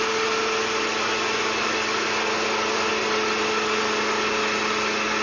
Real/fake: real